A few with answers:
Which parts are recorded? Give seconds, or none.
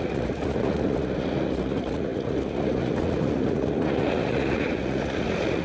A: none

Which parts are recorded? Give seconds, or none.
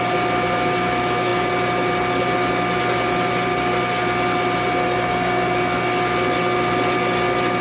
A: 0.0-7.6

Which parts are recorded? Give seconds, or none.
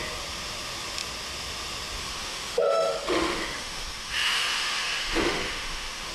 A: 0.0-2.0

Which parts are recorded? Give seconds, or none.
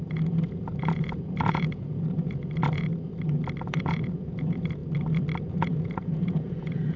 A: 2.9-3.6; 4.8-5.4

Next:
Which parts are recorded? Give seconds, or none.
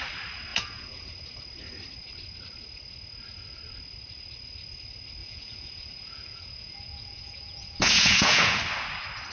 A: 0.0-0.5; 1.1-5.2; 8.6-9.3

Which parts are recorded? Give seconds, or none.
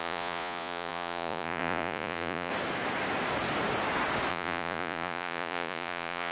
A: 2.5-4.3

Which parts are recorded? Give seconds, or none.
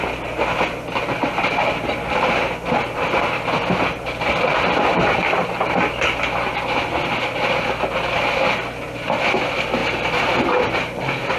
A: 0.0-4.9; 5.7-9.8; 10.4-11.4